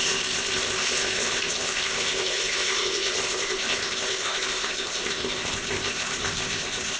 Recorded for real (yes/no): no